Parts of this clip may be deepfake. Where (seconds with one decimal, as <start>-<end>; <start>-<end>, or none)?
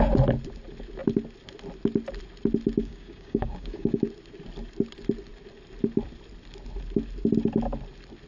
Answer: 2.8-4.0